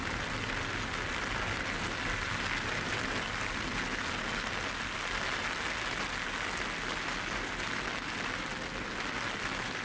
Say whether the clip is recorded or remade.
recorded